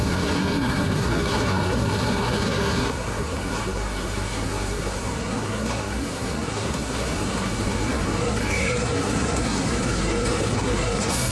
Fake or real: fake